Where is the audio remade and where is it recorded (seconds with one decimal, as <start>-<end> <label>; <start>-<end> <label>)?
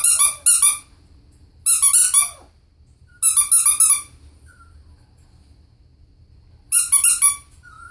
0.0-7.9 recorded